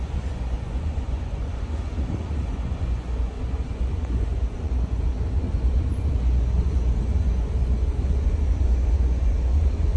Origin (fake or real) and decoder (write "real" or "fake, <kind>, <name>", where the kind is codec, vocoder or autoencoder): fake, vocoder, Vocos